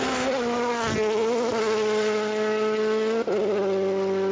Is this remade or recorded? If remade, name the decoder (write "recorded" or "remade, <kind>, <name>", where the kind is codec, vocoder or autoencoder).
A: recorded